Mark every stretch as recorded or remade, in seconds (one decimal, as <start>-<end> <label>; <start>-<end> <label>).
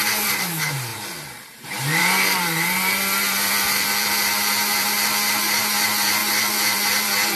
0.0-7.4 remade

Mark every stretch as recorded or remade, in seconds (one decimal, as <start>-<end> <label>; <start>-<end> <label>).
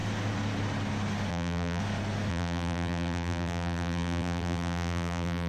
0.0-1.3 recorded; 1.3-1.8 remade; 1.8-2.3 recorded; 2.3-5.5 remade